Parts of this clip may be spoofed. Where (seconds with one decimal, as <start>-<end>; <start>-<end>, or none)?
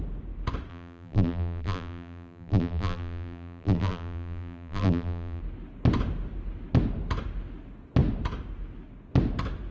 0.7-5.4